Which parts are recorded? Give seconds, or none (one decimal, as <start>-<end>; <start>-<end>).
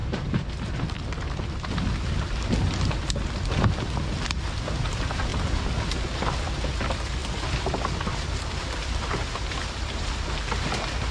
1.5-5.3; 5.9-7.2; 9.3-11.1